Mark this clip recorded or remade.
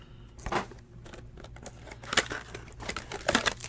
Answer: recorded